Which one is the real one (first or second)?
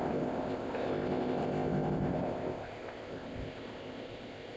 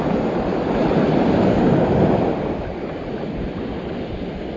second